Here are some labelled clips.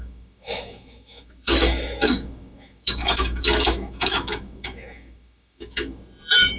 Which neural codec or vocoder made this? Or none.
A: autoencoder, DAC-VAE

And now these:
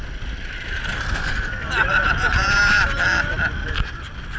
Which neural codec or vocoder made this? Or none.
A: none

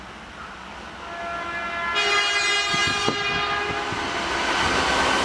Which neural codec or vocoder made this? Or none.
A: none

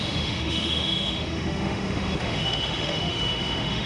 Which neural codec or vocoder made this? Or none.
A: autoencoder, DAC-VAE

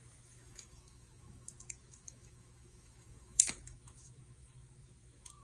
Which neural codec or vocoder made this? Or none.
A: autoencoder, DAC-VAE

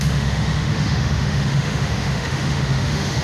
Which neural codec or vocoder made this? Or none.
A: autoencoder, DAC-VAE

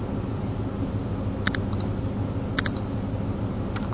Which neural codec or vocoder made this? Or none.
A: none